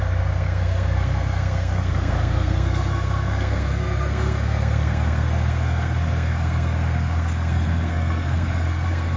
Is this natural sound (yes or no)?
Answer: no